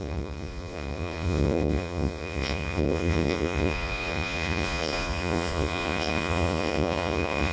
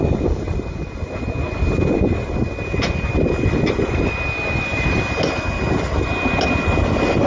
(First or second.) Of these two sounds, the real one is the second